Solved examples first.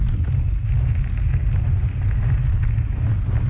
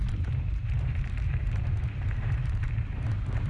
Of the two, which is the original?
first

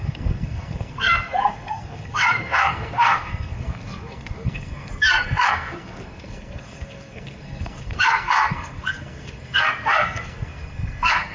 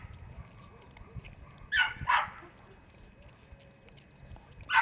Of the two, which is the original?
second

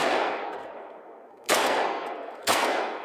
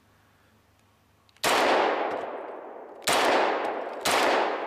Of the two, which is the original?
second